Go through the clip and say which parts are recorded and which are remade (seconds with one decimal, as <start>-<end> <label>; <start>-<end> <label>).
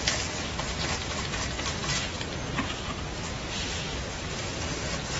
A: 0.0-1.8 recorded; 1.8-2.5 remade; 2.5-3.9 recorded; 3.9-4.8 remade; 4.8-5.2 recorded